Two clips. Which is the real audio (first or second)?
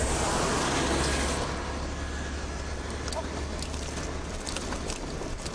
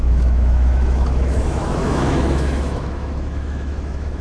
first